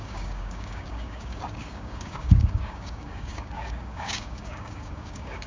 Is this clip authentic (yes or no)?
no